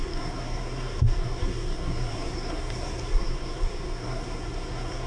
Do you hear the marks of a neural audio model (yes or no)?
yes